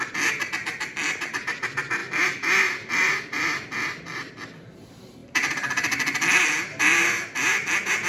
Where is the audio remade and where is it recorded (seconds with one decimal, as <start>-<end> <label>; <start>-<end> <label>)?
0.0-8.1 recorded